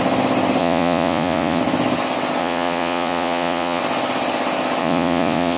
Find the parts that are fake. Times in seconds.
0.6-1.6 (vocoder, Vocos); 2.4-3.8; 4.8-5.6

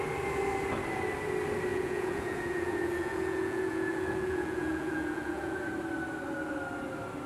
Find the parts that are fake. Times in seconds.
1.7-5.7 (vocoder, Vocos)

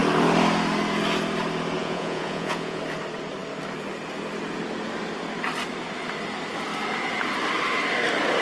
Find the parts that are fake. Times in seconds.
1.8-2.8 (vocoder, Vocos)

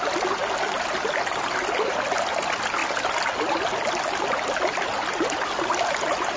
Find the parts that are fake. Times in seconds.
none

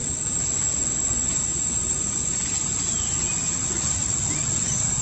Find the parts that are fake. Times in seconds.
none